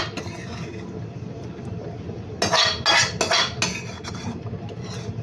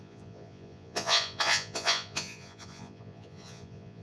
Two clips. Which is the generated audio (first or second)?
second